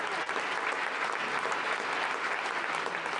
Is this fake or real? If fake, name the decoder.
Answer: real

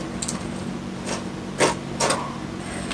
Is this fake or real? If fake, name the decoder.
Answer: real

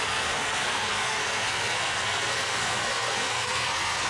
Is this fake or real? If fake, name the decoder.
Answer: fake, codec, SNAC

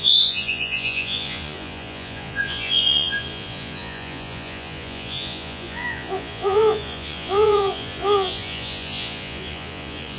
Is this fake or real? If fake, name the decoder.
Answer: fake, vocoder, Vocos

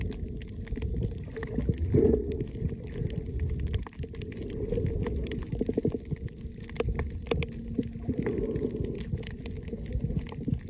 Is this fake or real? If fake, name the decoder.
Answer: real